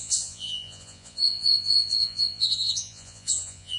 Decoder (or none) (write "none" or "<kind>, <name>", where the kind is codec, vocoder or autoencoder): vocoder, Vocos